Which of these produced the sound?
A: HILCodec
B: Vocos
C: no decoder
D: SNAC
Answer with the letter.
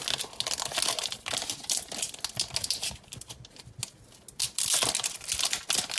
C